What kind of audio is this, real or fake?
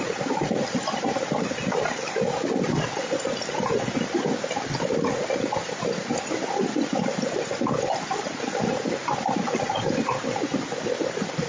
real